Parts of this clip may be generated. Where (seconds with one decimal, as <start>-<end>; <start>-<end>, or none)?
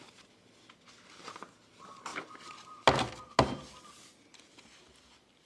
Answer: none